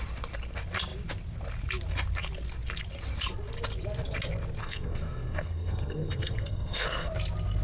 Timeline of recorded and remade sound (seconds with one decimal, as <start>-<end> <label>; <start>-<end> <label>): 0.0-4.6 recorded; 4.6-7.1 remade; 7.1-7.6 recorded